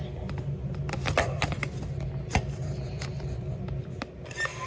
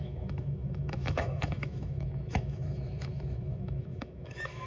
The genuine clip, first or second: first